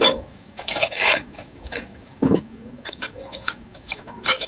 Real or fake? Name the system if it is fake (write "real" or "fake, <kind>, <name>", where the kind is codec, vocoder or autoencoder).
fake, codec, DAC